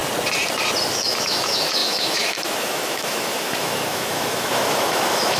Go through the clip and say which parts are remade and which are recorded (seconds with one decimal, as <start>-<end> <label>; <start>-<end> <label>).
0.0-0.9 recorded; 0.9-5.4 remade